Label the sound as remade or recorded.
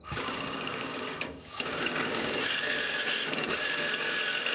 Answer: remade